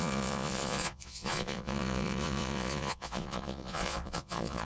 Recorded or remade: remade